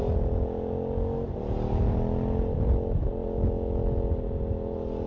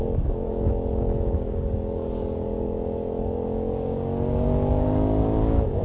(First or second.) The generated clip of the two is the second